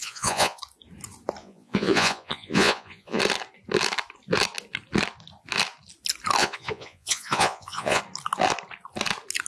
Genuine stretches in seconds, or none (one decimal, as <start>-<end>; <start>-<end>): 0.6-1.4; 3.2-6.4; 8.0-9.5